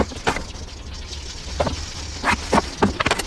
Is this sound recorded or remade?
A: recorded